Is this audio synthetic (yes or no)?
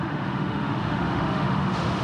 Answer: yes